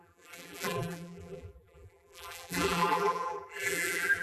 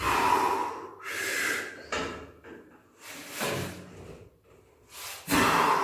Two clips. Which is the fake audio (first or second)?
first